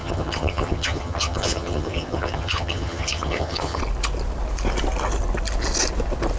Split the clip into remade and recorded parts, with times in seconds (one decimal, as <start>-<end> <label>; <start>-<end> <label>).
0.0-3.8 remade; 3.8-6.4 recorded